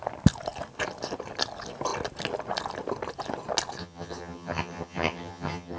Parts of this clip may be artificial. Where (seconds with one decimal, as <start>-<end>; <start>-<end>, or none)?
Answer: 3.8-5.8